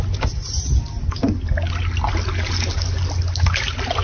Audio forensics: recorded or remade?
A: recorded